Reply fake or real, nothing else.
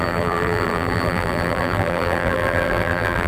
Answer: fake